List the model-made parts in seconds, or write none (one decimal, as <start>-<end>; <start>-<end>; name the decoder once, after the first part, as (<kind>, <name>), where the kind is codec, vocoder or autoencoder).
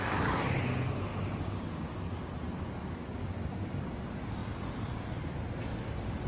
1.1-2.2 (codec, DAC); 3.0-4.0